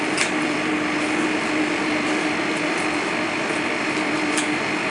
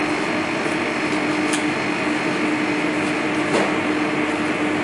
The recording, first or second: second